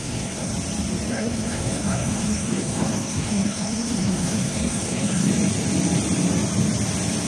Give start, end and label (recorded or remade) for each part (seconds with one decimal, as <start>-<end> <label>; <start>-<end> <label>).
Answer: 0.0-0.5 remade; 0.5-1.1 recorded; 1.1-5.3 remade; 5.3-7.3 recorded